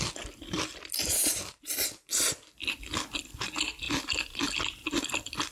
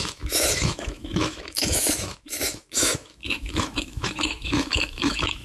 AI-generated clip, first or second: second